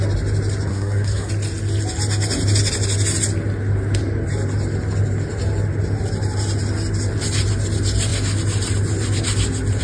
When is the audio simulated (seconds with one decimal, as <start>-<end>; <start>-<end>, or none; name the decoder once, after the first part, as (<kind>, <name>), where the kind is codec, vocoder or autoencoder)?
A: 0.7-1.3 (codec, SNAC)